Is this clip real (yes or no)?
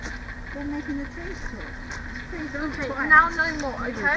yes